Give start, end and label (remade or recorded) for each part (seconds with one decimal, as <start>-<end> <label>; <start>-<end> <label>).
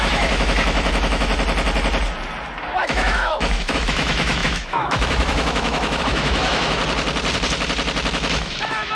0.0-1.3 remade; 1.3-2.8 recorded; 2.8-6.8 remade; 6.8-8.1 recorded; 8.1-8.9 remade